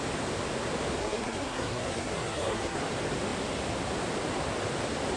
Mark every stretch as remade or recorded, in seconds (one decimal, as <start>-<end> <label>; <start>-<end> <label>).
0.0-1.0 recorded; 1.0-2.8 remade; 2.8-5.2 recorded